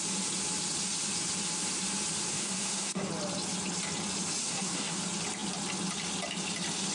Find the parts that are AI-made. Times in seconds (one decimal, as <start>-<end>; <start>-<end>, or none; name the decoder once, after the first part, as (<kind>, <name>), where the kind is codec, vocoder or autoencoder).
2.3-3.1 (codec, SNAC); 4.4-5.0